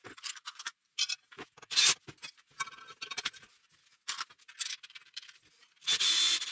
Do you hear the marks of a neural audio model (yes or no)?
no